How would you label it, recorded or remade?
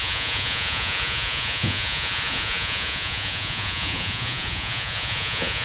remade